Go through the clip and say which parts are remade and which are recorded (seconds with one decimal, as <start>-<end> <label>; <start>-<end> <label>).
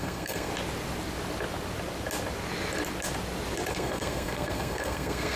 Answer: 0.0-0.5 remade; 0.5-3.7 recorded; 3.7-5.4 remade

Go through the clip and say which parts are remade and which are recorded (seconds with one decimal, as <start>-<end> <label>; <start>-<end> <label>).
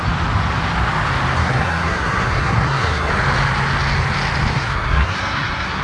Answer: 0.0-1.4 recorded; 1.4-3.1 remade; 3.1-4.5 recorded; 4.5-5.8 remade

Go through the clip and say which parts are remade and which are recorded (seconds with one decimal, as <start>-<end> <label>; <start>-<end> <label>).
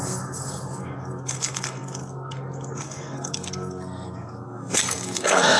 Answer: 0.0-5.6 remade